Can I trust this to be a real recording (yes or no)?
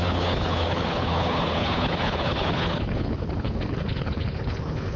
no